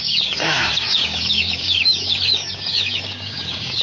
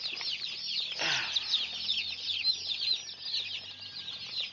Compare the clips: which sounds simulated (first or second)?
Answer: first